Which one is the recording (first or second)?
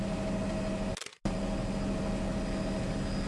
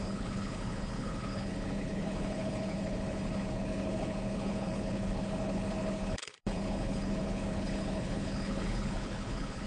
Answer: first